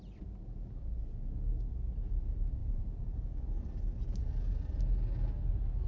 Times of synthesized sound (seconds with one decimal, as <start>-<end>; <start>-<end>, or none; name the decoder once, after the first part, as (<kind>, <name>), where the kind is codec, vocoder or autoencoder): 2.6-3.4 (vocoder, BigVGAN v2)